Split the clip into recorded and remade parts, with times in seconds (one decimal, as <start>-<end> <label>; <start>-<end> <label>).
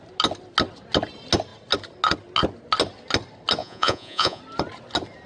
0.0-3.6 recorded; 3.6-4.4 remade; 4.4-5.3 recorded